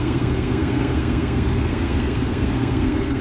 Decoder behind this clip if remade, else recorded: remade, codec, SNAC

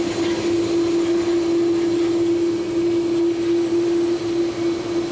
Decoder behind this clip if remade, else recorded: recorded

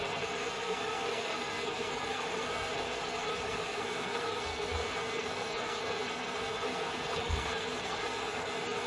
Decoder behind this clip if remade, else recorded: remade, codec, SNAC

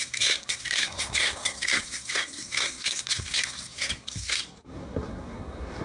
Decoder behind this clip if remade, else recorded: remade, codec, SNAC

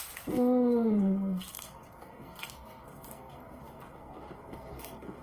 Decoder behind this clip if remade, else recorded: remade, codec, SNAC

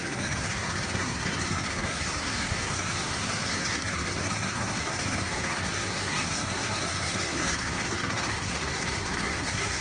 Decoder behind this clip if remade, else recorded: remade, codec, SNAC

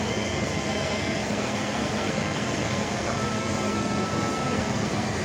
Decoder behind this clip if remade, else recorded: remade, codec, SNAC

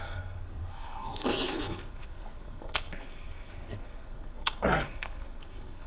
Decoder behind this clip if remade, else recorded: remade, codec, SNAC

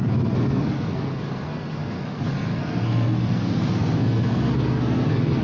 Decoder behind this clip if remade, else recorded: remade, codec, SNAC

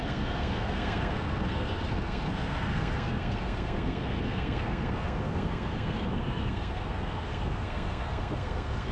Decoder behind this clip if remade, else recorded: remade, codec, SNAC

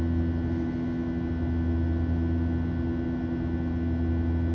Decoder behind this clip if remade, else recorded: recorded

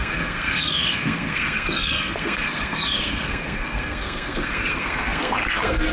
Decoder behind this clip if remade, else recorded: remade, codec, SNAC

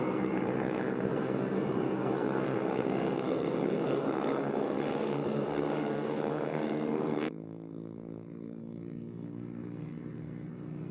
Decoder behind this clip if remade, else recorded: remade, codec, SNAC